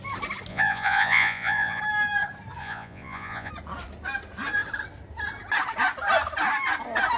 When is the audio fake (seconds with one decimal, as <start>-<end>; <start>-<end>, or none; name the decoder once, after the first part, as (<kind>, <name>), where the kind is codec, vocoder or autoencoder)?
0.5-1.8 (vocoder, Vocos); 2.6-3.5